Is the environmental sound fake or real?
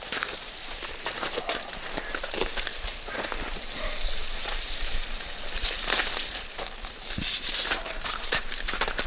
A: fake